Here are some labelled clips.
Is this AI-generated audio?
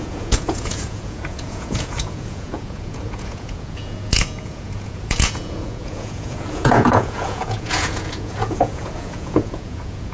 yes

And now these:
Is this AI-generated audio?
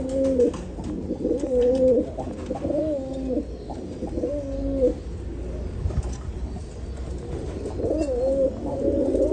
no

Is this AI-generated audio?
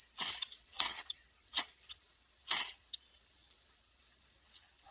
yes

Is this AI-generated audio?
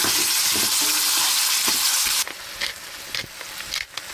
no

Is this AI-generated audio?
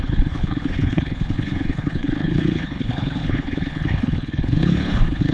yes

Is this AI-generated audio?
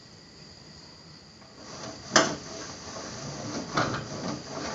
no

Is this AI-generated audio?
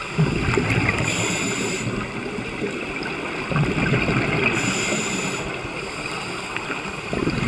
no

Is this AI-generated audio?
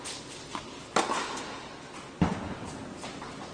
no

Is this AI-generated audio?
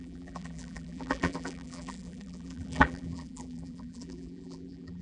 yes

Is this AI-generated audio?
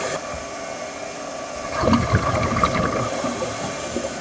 no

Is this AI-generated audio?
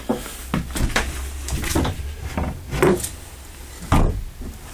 no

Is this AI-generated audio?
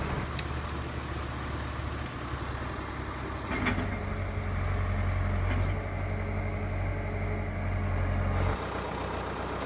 no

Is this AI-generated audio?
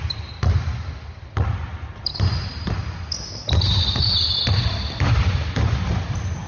no